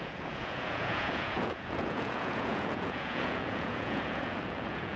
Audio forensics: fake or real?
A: fake